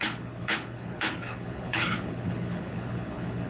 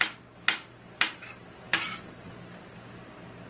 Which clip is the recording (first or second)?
second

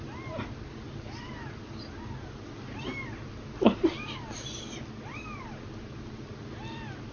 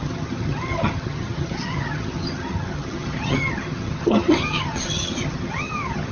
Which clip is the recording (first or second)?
first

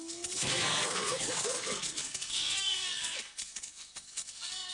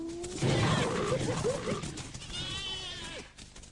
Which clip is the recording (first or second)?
second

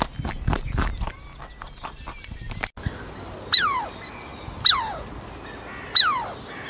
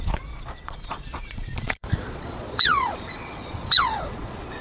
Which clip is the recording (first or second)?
first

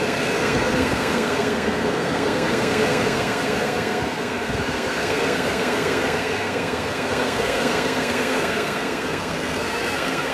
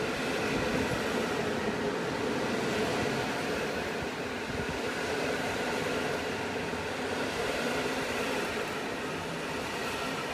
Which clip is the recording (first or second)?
second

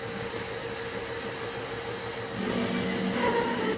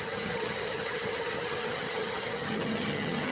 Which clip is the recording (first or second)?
first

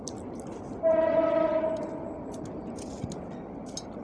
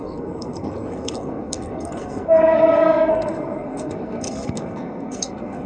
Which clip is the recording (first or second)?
first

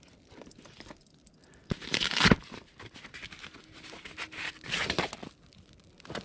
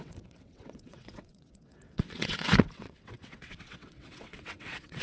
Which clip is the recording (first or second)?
first